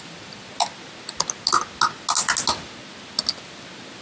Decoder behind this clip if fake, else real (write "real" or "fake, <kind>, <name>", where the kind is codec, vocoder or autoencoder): real